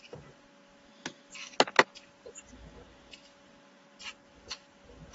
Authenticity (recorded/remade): recorded